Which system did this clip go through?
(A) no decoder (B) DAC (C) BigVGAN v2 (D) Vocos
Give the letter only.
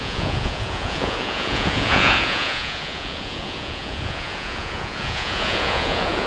D